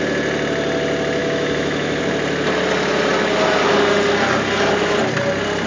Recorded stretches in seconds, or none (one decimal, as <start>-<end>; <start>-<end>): 0.0-1.2; 2.0-5.7